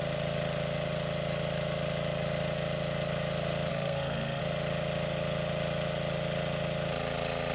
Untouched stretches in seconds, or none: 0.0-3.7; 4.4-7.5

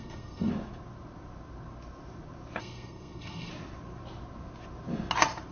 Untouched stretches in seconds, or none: 0.5-2.6; 3.5-5.5

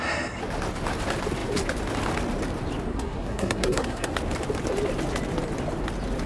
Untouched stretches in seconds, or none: 0.0-2.9; 4.1-6.3

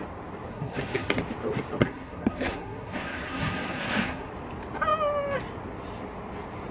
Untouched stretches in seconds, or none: 0.0-0.5; 1.2-1.8; 4.3-6.7

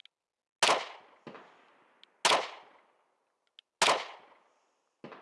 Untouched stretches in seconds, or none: 0.0-5.2

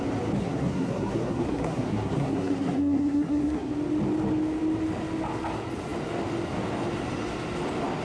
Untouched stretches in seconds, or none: 0.0-0.4; 3.7-8.0

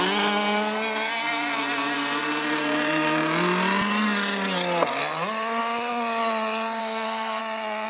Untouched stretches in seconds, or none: 0.0-6.8; 7.4-7.9